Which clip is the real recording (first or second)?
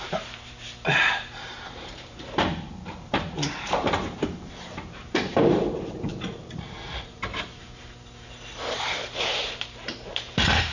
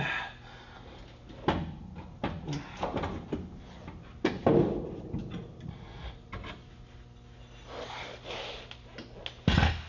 second